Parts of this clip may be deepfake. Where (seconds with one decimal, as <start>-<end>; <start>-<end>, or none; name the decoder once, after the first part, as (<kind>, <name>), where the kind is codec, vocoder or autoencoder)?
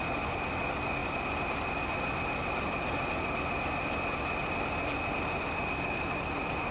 none